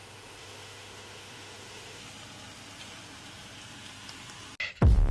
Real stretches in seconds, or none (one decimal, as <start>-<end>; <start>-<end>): 2.0-5.1